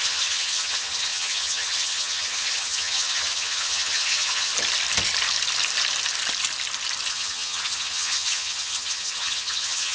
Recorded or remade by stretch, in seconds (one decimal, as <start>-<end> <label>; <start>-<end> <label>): 0.0-4.5 remade; 4.5-7.1 recorded; 7.1-9.9 remade